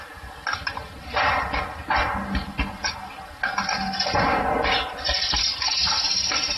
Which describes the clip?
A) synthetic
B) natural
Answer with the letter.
B